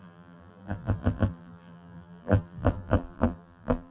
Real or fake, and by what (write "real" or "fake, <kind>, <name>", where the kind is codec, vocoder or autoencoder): fake, vocoder, BigVGAN v2